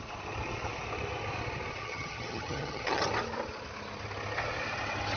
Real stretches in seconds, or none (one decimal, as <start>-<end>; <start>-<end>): 0.0-1.8; 3.0-5.2